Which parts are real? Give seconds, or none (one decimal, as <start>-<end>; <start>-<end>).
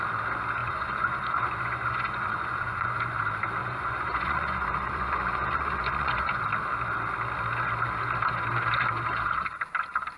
0.0-0.6; 3.2-3.6; 6.4-10.2